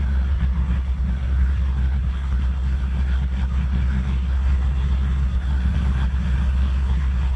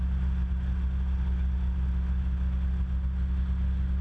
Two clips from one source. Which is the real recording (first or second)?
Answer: second